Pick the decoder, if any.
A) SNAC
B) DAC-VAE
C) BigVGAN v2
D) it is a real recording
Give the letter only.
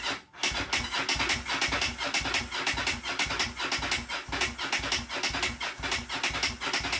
D